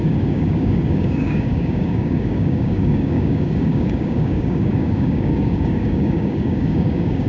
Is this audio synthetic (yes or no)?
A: yes